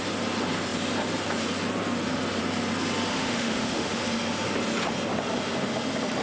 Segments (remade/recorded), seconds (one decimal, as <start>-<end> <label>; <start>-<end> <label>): 0.0-3.1 recorded; 3.1-4.0 remade; 4.0-6.2 recorded